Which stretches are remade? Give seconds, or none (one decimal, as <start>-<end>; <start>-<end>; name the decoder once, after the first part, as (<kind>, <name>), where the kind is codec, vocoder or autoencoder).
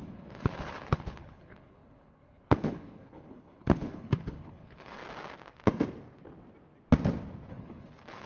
0.0-5.0 (codec, HILCodec); 7.5-8.3